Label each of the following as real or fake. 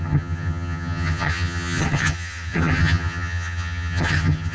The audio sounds fake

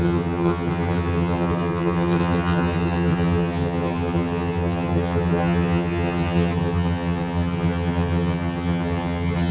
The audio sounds fake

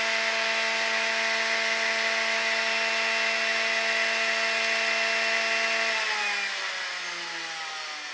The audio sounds real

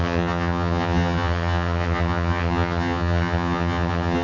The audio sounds fake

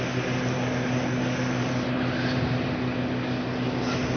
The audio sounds real